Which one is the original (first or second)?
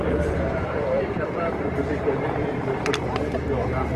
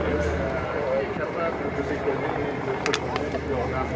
second